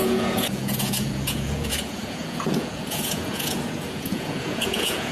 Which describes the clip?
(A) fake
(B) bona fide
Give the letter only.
A